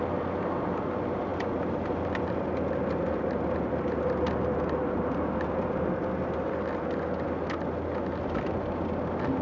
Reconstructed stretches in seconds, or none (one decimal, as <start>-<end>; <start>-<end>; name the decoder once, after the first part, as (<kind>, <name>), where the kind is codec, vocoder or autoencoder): none